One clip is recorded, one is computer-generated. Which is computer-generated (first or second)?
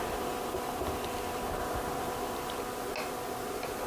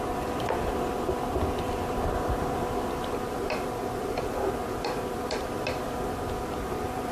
second